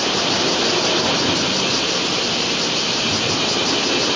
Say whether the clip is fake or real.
real